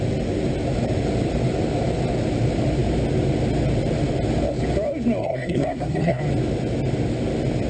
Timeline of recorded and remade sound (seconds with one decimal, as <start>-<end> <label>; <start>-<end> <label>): 0.0-5.2 recorded; 5.2-6.2 remade; 6.2-7.7 recorded